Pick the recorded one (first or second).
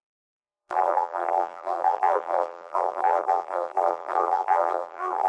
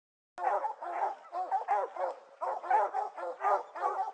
second